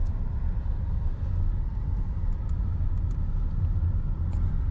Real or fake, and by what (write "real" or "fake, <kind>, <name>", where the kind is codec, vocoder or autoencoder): real